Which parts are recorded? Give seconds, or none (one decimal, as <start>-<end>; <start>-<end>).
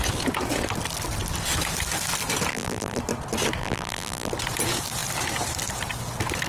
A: 0.0-2.5; 3.0-3.6; 4.3-6.5